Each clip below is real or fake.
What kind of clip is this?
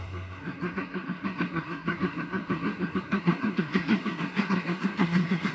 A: fake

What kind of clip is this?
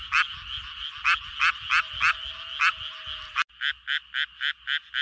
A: real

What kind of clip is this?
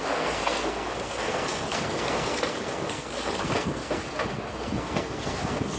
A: fake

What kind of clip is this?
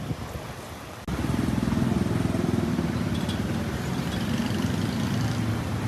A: real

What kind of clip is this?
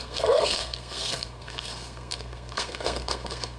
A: fake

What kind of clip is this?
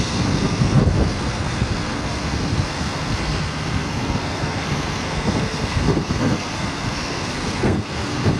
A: fake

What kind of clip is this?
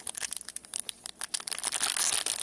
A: real